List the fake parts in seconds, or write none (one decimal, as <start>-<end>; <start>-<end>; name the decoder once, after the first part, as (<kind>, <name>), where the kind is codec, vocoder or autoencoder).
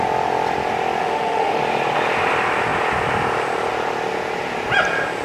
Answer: 1.0-1.6 (autoencoder, DAC-VAE)